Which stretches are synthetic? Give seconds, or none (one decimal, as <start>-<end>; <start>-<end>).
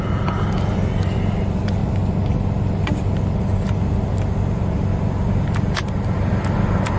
none